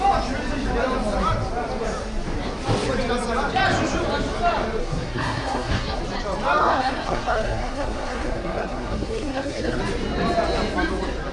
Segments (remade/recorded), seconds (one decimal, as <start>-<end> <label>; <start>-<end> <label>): 0.0-4.8 recorded; 4.8-6.0 remade; 6.0-6.6 recorded; 6.6-9.8 remade; 9.8-11.3 recorded